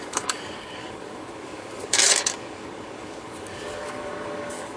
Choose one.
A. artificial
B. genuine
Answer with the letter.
A